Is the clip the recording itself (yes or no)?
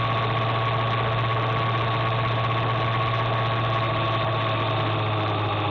yes